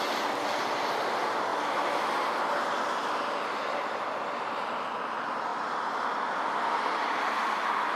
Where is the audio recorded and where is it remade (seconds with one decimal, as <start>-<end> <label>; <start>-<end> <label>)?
0.0-8.0 recorded